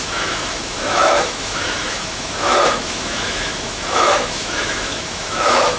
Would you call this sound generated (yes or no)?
yes